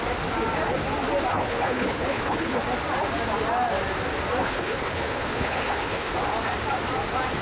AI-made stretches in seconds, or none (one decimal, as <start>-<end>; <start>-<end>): 1.3-2.6; 4.4-6.1